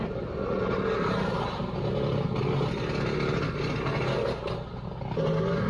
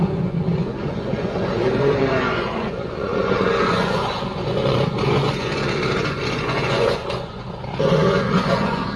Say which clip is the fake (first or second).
second